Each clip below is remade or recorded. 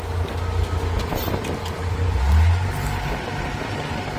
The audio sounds recorded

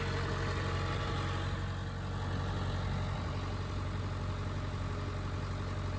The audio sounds recorded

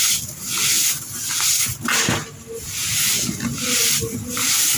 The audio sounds recorded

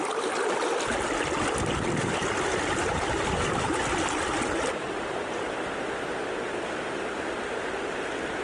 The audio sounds recorded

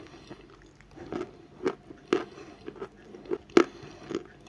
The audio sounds recorded